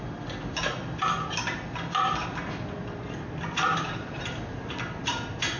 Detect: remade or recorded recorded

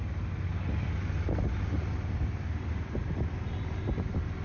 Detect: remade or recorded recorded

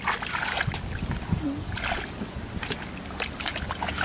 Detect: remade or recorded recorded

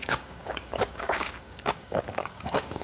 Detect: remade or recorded remade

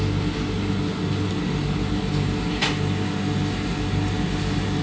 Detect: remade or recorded recorded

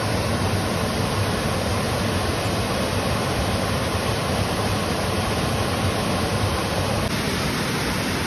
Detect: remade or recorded recorded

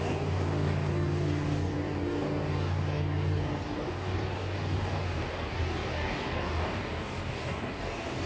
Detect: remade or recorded remade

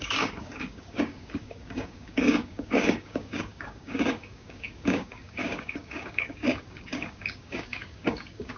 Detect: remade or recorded remade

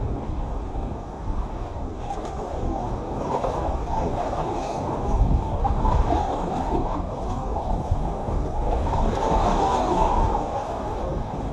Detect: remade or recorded remade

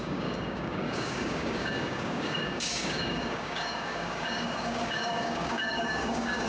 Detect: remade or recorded remade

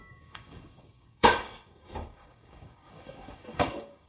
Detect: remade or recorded remade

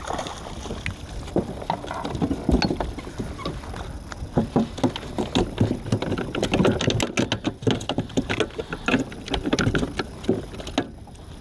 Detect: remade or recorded recorded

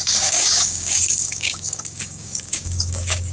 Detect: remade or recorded remade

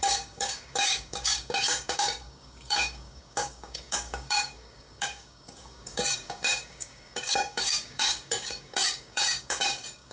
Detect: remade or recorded remade